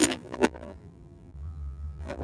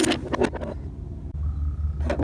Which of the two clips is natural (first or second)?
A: second